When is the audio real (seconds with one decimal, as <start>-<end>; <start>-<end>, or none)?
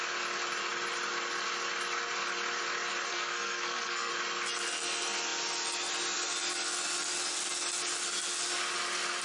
0.0-3.1; 4.1-9.2